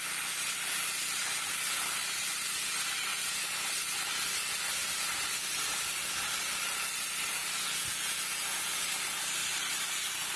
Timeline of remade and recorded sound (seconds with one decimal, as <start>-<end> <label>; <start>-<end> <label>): 0.0-3.1 recorded; 3.1-3.7 remade; 3.7-7.4 recorded; 7.4-8.8 remade; 8.8-10.4 recorded